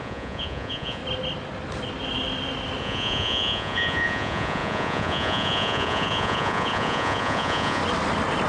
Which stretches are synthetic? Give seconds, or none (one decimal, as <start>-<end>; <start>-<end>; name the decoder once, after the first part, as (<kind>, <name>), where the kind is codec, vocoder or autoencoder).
0.0-1.0 (vocoder, Vocos); 2.8-7.8